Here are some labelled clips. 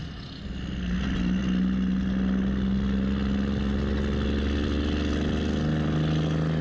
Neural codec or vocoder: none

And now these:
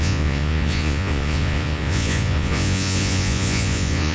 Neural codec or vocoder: vocoder, Vocos